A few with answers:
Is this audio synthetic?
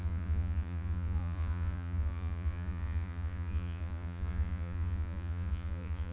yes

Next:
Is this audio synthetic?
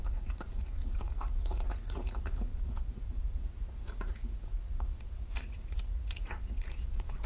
yes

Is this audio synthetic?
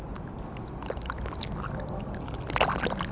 no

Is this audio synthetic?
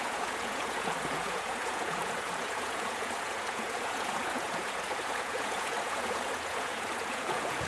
yes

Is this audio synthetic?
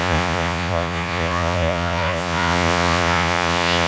yes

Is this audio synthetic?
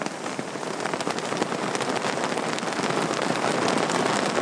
no